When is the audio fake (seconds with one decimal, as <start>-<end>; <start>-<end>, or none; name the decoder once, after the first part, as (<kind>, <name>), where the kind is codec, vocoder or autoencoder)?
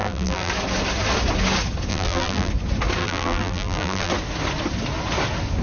0.0-0.5 (vocoder, BigVGAN v2); 1.9-2.5; 3.0-4.1